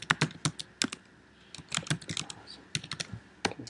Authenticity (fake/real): real